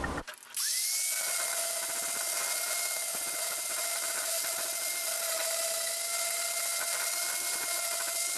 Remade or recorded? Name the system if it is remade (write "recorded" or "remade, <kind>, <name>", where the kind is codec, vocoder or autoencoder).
recorded